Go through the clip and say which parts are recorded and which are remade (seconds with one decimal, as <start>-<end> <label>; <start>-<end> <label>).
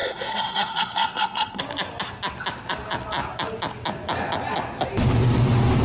0.0-1.6 remade; 1.6-5.8 recorded